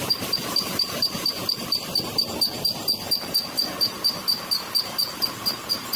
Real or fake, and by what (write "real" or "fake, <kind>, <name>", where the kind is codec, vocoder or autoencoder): real